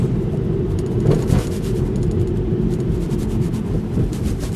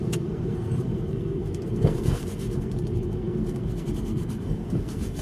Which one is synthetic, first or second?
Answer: second